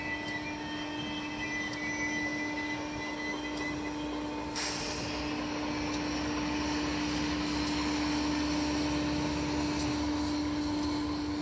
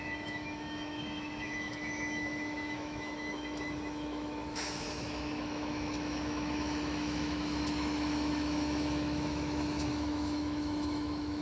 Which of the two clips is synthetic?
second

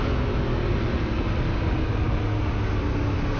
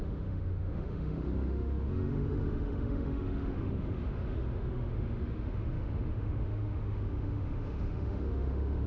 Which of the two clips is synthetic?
second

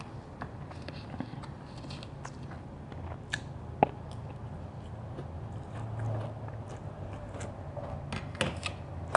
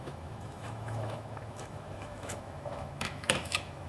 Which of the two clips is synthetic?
second